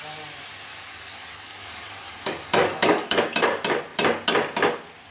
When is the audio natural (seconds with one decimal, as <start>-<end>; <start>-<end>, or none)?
0.0-0.7; 3.2-5.1